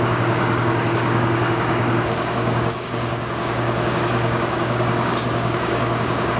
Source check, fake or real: fake